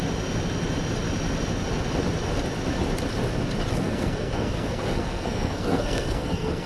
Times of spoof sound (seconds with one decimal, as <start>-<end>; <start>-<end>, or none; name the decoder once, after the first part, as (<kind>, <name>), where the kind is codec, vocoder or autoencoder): 3.7-6.7 (codec, SNAC)

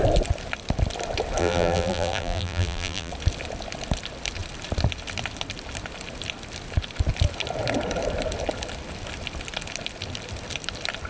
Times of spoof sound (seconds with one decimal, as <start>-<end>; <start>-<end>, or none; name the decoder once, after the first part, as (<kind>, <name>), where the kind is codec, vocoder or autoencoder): 1.4-3.1 (vocoder, BigVGAN v2)